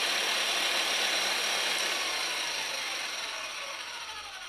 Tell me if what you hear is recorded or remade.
remade